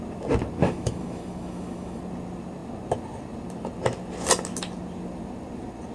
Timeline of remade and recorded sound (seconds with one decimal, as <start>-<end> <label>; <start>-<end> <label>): 0.0-0.6 recorded; 0.6-2.0 remade; 2.0-5.9 recorded